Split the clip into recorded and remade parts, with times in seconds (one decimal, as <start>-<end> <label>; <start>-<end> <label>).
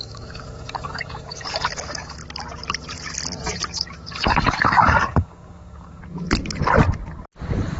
0.0-2.2 remade; 2.2-4.2 recorded; 4.2-6.0 remade; 6.0-7.8 recorded